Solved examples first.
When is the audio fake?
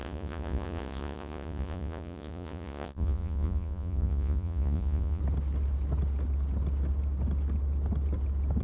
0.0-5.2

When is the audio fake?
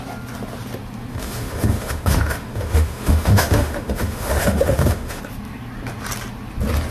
1.1-5.2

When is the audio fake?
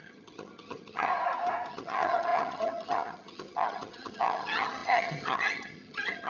0.0-1.1; 1.7-6.3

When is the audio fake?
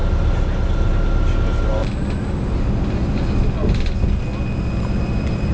none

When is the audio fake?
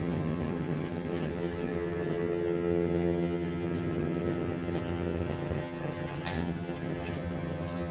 0.0-7.9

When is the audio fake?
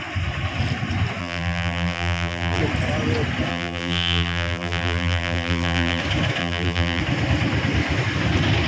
1.2-2.6; 3.5-6.0; 6.4-7.0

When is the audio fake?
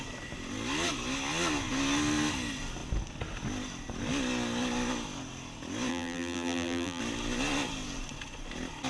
5.9-7.0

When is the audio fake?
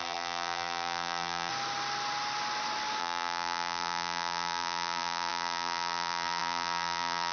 0.0-1.5; 3.0-7.3